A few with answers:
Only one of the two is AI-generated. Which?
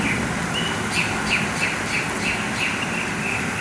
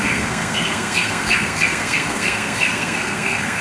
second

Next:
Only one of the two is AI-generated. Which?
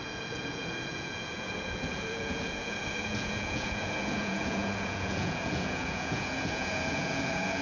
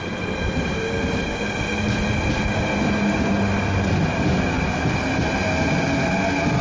first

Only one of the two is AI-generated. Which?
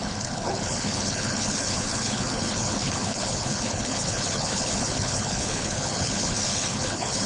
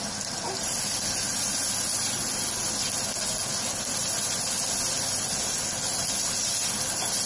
first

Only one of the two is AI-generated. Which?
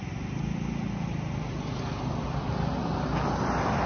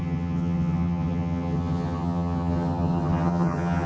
second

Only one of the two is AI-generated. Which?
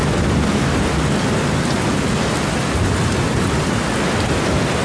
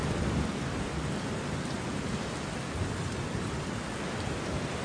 second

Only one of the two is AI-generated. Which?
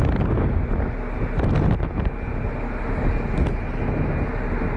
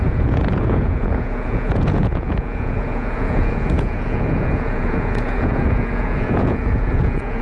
second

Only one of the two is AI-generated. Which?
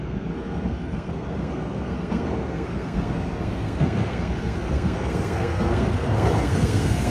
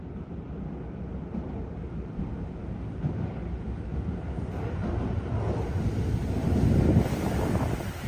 first